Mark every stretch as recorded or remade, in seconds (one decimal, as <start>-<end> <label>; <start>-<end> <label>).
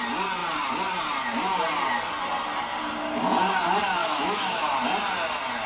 0.0-4.0 recorded; 4.0-4.6 remade; 4.6-5.7 recorded